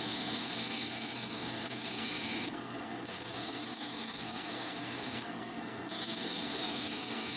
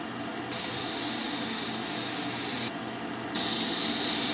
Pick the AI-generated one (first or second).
first